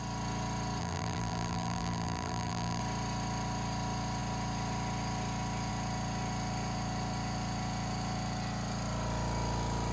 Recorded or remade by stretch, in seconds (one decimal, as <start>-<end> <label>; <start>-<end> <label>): 0.0-0.8 recorded; 0.8-2.8 remade; 2.8-9.9 recorded